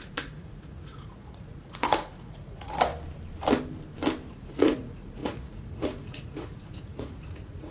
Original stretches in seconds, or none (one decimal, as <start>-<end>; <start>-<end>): 2.9-4.3